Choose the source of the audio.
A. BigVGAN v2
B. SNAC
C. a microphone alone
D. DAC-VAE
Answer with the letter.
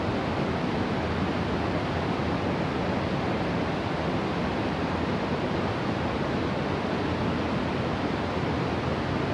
C